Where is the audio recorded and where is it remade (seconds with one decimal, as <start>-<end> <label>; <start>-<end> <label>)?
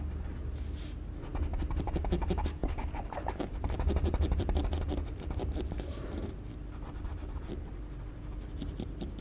0.0-1.3 recorded; 1.3-2.0 remade; 2.0-2.6 recorded; 2.6-6.1 remade; 6.1-9.2 recorded